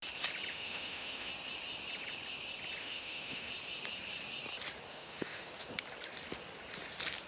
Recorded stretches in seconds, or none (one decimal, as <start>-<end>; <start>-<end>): 0.0-0.5; 1.3-2.8; 3.5-4.9; 5.5-7.3